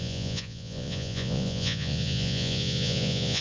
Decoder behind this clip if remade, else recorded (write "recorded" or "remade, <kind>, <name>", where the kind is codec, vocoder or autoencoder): remade, vocoder, Vocos